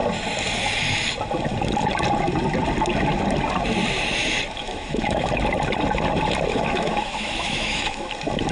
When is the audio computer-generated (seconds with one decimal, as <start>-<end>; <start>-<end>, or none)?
4.6-5.3; 6.5-8.1